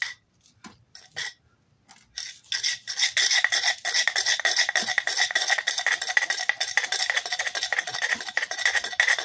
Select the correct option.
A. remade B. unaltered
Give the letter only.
B